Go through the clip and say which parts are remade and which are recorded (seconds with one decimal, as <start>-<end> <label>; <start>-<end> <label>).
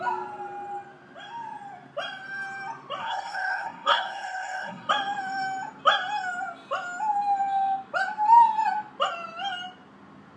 0.0-3.0 recorded; 3.0-4.9 remade; 4.9-10.4 recorded